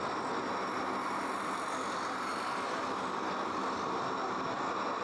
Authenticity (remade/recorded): recorded